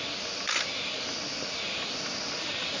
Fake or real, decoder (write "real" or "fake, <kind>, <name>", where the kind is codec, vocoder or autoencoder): real